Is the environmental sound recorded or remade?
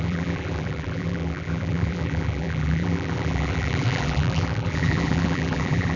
remade